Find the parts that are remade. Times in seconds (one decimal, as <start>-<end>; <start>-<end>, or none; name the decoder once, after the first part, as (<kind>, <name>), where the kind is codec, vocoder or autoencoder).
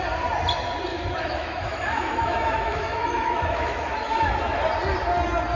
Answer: 0.9-4.3 (autoencoder, DAC-VAE)